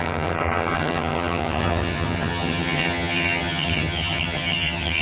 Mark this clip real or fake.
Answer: fake